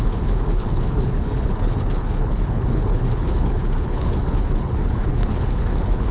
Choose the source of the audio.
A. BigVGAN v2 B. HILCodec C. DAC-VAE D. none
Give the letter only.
B